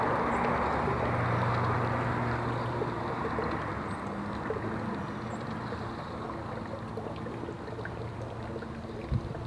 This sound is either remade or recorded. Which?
recorded